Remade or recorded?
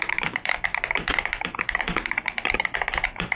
remade